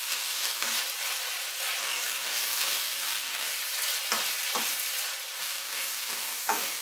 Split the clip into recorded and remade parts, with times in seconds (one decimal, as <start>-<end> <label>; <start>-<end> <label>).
0.0-0.7 remade; 0.7-1.8 recorded; 1.8-3.6 remade; 3.6-5.4 recorded; 5.4-6.8 remade